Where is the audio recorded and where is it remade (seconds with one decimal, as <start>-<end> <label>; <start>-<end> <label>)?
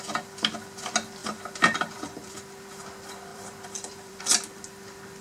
0.0-1.2 recorded; 1.2-2.3 remade; 2.3-3.3 recorded; 3.3-4.2 remade; 4.2-5.2 recorded